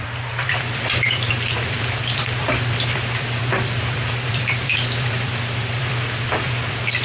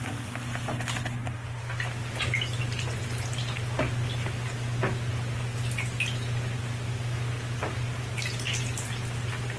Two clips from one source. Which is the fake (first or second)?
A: first